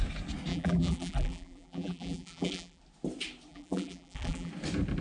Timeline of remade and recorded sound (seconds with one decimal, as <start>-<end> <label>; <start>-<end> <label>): 0.0-0.5 recorded; 0.5-2.8 remade; 2.8-3.5 recorded; 3.5-4.5 remade; 4.5-5.0 recorded